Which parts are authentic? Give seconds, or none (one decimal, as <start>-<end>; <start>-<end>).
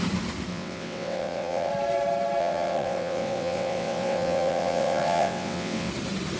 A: 0.0-0.5; 1.7-2.4; 5.9-6.4